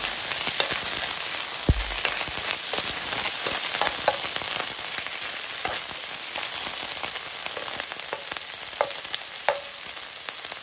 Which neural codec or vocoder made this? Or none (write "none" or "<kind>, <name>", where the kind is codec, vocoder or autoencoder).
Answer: none